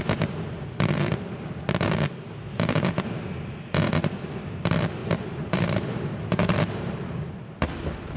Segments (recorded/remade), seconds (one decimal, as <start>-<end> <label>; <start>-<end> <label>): 0.0-5.0 recorded; 5.0-7.7 remade; 7.7-8.2 recorded